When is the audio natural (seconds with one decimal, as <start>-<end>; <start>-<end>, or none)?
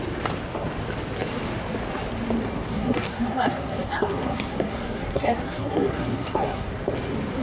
0.0-2.7; 6.7-7.4